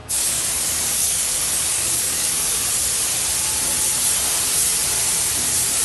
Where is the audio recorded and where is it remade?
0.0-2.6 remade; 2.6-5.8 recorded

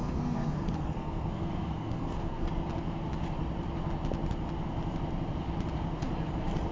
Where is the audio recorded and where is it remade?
0.0-2.5 remade; 2.5-6.7 recorded

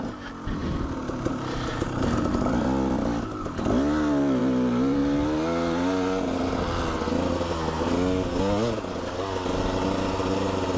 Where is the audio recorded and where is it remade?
0.0-10.8 recorded